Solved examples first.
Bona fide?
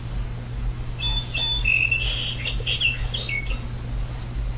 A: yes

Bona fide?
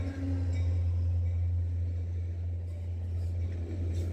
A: yes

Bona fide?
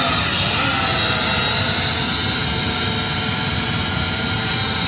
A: yes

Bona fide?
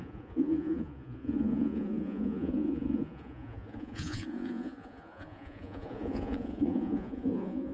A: no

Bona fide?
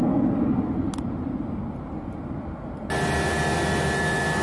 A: yes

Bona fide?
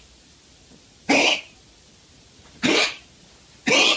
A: yes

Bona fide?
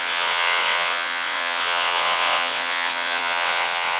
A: no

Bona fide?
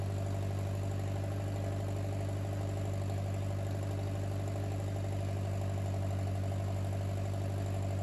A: yes